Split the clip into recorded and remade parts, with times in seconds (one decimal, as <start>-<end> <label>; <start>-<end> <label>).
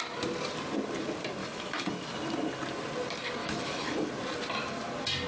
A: 0.0-1.4 recorded; 1.4-2.1 remade; 2.1-3.4 recorded; 3.4-4.1 remade; 4.1-5.3 recorded